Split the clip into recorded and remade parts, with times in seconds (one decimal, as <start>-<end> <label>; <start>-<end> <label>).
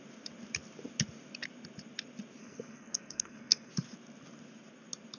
0.0-2.4 recorded; 2.4-3.7 remade; 3.7-5.2 recorded